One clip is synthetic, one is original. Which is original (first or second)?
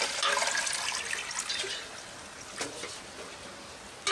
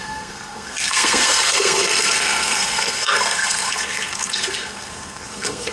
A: first